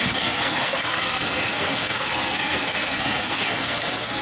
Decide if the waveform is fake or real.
fake